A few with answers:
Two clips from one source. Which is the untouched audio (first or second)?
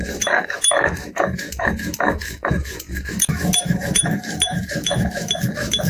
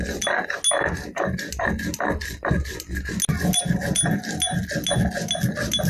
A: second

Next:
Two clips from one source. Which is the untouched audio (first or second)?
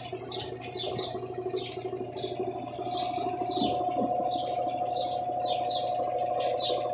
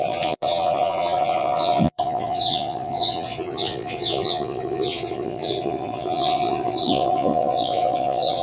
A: first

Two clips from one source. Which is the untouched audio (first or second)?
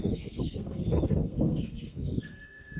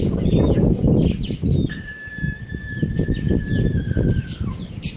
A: second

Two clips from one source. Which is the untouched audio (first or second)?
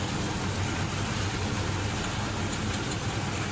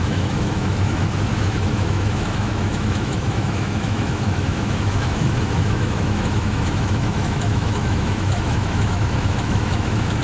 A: first